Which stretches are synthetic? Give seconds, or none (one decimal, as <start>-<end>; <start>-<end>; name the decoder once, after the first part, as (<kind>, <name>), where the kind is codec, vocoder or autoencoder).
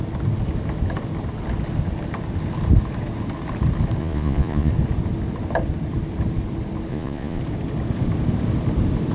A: 4.0-4.7 (vocoder, Vocos); 6.9-7.4